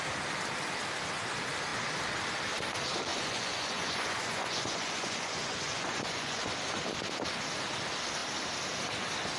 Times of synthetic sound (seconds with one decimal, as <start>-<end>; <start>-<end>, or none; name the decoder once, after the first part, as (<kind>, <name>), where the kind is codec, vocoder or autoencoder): 3.1-6.5 (vocoder, Vocos)